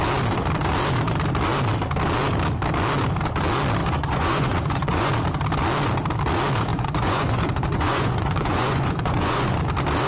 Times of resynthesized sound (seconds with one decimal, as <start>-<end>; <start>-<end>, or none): 3.8-5.1; 6.7-9.6